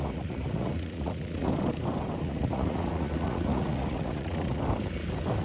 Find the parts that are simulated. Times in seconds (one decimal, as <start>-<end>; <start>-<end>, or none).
0.0-1.5; 2.2-4.6

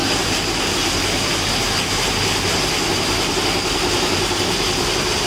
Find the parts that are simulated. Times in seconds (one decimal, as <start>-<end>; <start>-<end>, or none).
none

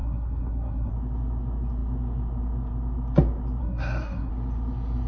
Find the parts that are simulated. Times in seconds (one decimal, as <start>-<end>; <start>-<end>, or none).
0.0-0.9; 3.6-4.3

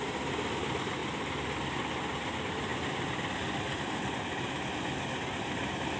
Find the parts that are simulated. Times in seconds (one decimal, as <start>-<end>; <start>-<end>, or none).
none

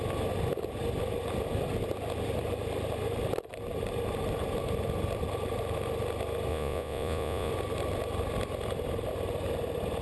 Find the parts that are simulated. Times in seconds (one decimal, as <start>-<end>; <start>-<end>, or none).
6.5-7.5

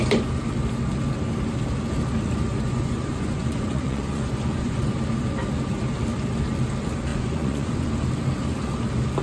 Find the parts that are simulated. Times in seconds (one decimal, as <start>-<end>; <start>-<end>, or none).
2.5-4.9; 7.1-7.9